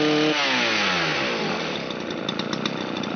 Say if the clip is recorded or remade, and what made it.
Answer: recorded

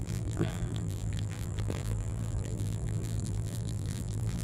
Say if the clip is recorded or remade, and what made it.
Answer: remade, vocoder, BigVGAN v2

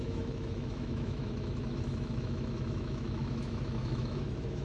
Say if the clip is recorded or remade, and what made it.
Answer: remade, autoencoder, DAC-VAE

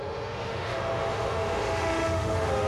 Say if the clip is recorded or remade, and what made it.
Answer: remade, autoencoder, DAC-VAE